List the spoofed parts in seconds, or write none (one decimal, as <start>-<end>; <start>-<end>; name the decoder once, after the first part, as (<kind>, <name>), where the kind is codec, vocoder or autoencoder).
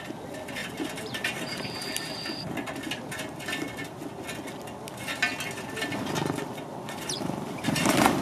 0.6-2.1 (vocoder, BigVGAN v2); 6.7-8.2